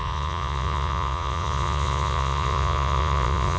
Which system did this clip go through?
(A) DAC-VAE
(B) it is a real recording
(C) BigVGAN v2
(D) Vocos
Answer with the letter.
D